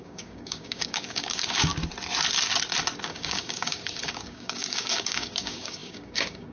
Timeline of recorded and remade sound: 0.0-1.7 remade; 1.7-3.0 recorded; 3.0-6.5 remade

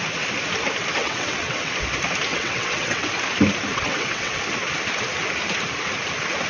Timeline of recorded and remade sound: 0.0-1.0 recorded; 1.0-1.7 remade; 1.7-2.3 recorded; 2.3-3.1 remade; 3.1-3.7 recorded; 3.7-4.4 remade; 4.4-6.5 recorded